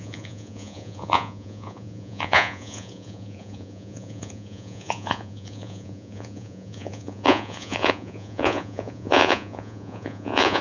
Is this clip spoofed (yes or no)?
yes